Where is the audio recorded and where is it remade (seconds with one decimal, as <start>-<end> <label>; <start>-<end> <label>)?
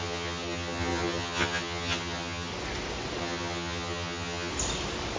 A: 0.0-2.5 remade; 2.5-3.2 recorded; 3.2-4.5 remade; 4.5-5.2 recorded